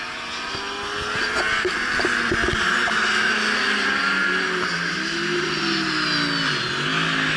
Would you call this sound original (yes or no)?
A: yes